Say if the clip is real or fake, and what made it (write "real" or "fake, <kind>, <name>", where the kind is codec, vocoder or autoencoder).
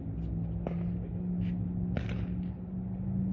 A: real